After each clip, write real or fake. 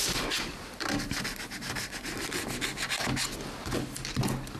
real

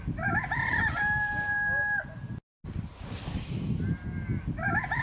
real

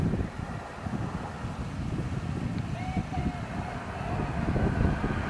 real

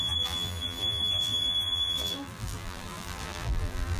fake